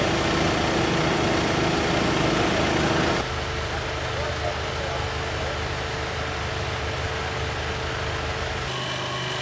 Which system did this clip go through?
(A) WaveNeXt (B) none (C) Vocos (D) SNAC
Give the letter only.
B